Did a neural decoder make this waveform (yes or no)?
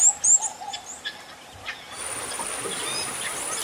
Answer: no